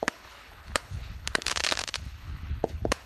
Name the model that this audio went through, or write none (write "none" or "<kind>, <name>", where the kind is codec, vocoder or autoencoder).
codec, HILCodec